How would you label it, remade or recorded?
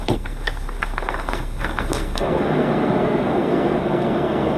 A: remade